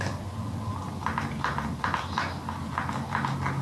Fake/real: real